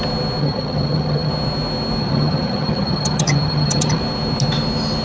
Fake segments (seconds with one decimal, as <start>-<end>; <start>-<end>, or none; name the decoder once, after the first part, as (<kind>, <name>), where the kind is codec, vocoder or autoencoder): 0.4-1.3 (vocoder, HiFi-GAN); 2.0-4.0